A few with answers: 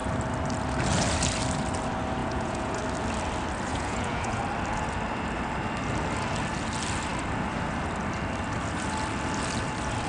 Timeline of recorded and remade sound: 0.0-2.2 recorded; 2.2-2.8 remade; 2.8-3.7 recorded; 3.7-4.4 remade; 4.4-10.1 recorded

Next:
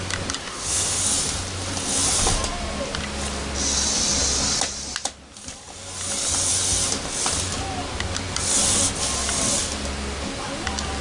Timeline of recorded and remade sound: 0.0-0.4 recorded; 0.4-1.0 remade; 1.0-11.0 recorded